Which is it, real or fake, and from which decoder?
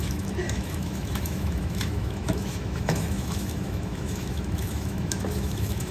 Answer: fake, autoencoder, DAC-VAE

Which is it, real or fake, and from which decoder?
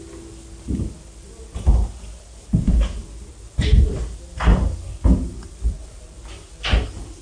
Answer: real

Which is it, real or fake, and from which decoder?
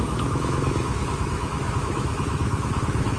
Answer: fake, autoencoder, DAC-VAE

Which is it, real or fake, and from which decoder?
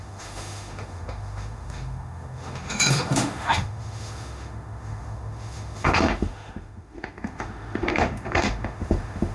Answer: fake, autoencoder, DAC-VAE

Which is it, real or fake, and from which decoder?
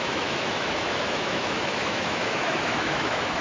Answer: fake, autoencoder, DAC-VAE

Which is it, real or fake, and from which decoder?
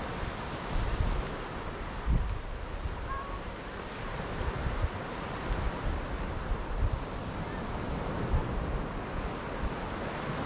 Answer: real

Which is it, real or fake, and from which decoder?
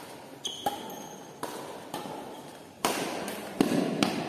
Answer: real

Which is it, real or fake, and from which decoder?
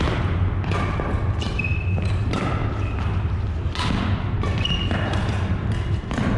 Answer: real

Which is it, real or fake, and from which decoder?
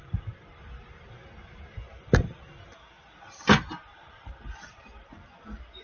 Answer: real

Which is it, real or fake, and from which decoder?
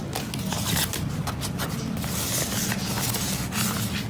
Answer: real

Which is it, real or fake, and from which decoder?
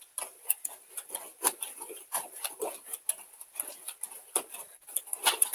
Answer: real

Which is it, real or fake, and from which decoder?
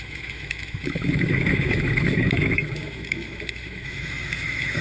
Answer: fake, autoencoder, DAC-VAE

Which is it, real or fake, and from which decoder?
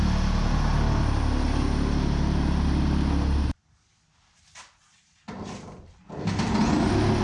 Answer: real